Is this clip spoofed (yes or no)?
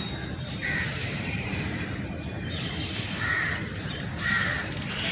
yes